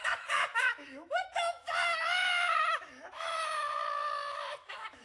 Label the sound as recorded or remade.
remade